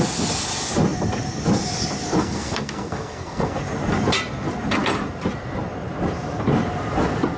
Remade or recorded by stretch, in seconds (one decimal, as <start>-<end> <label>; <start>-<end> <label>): 0.0-2.2 recorded; 2.2-3.6 remade; 3.6-7.4 recorded